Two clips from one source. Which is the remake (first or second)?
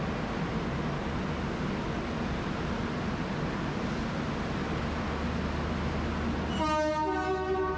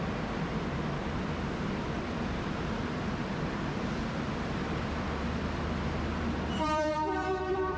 second